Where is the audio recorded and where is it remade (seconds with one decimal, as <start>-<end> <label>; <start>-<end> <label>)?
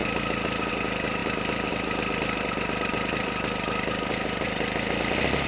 0.0-5.5 remade